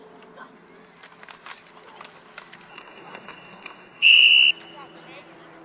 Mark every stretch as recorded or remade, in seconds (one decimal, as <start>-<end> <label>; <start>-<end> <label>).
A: 0.0-2.7 recorded; 2.7-4.3 remade; 4.3-5.6 recorded